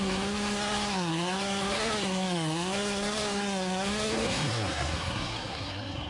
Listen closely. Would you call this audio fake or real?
fake